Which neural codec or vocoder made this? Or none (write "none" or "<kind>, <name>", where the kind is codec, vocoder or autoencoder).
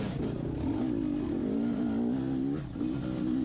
none